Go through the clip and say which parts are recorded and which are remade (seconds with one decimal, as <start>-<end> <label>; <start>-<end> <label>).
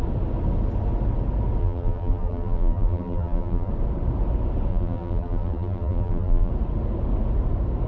0.0-1.6 recorded; 1.6-3.7 remade; 3.7-4.7 recorded; 4.7-6.5 remade; 6.5-7.9 recorded